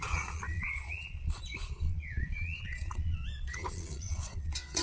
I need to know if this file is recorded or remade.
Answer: remade